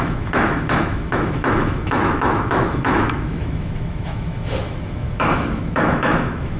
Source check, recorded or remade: remade